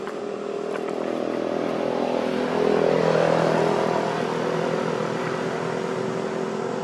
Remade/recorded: recorded